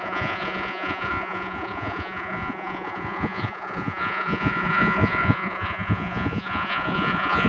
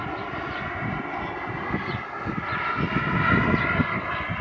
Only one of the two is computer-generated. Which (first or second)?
first